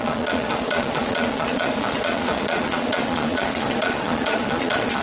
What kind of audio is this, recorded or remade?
remade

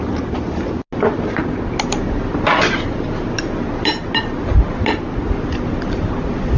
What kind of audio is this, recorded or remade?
recorded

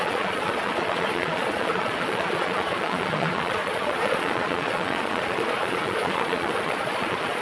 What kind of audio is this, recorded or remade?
remade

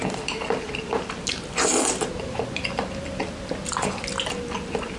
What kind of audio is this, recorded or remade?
recorded